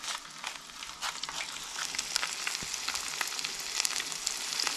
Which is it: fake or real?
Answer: real